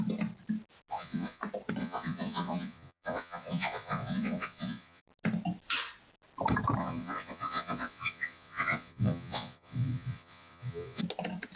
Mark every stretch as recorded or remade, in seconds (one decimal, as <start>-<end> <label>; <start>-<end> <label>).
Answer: 0.0-0.9 recorded; 0.9-1.4 remade; 1.4-1.8 recorded; 1.8-5.0 remade; 5.0-6.8 recorded; 6.8-11.0 remade; 11.0-11.6 recorded